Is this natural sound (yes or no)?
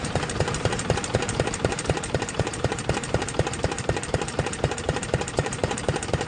no